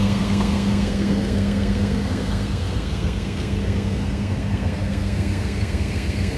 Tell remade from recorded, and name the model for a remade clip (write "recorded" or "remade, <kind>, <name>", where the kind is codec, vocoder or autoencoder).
remade, codec, SNAC